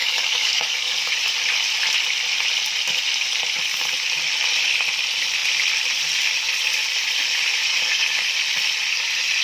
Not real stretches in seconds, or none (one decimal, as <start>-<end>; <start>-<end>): 0.0-1.1; 7.7-8.3